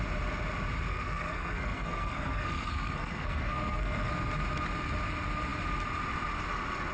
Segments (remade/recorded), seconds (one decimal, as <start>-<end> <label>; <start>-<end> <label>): 0.0-0.9 recorded; 0.9-4.1 remade; 4.1-6.9 recorded